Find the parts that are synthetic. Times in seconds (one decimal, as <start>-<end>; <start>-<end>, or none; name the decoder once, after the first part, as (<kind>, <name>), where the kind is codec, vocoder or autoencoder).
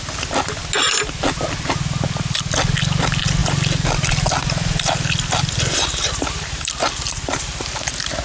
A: none